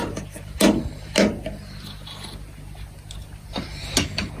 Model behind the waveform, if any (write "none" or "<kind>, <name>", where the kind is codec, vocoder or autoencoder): none